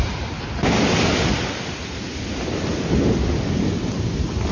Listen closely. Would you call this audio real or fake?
real